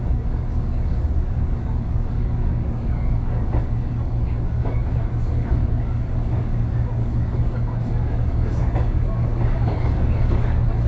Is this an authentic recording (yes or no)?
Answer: no